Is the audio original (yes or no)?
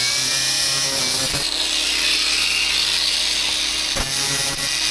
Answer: yes